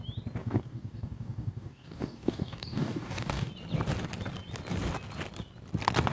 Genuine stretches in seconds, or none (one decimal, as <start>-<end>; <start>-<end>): 0.0-0.4; 3.5-6.1